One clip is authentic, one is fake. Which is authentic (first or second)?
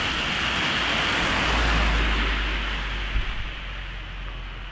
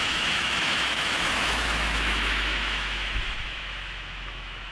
first